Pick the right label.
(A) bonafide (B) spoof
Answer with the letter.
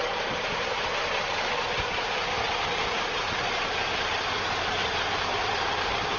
B